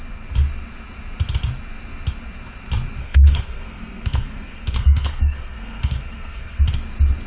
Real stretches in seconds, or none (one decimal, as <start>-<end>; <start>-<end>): 0.0-3.0; 6.6-7.3